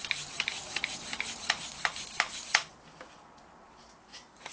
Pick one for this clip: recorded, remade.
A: recorded